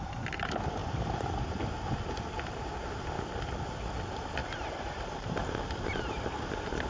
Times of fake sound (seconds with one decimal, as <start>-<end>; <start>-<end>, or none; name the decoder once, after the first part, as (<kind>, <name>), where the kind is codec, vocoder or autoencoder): 0.8-1.4 (vocoder, BigVGAN v2); 4.4-5.6